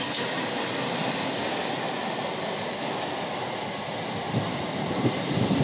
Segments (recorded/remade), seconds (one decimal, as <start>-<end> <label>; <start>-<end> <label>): 0.0-5.6 recorded